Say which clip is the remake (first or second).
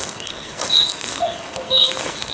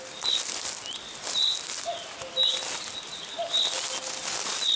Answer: first